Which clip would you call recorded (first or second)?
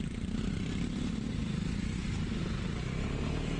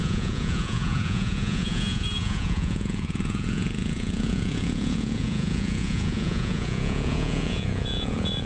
first